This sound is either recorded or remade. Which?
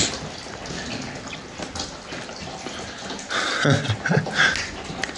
recorded